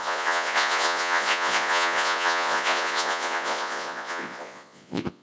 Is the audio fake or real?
fake